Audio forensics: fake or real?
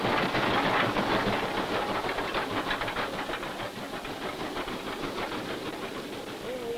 real